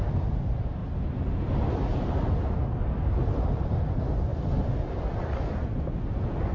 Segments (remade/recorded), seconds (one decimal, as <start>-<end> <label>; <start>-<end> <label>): 0.0-0.8 recorded; 0.8-3.8 remade; 3.8-6.5 recorded